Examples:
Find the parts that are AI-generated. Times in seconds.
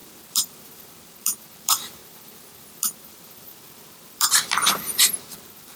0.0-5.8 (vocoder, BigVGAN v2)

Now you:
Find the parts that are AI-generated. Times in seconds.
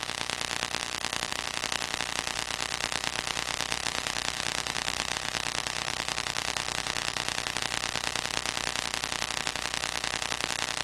3.8-7.6 (vocoder, BigVGAN v2)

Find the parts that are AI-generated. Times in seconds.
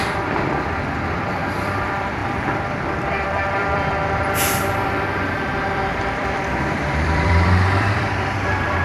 0.0-8.8 (vocoder, BigVGAN v2)